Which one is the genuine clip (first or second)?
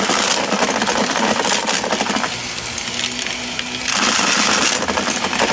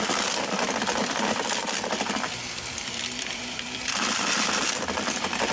first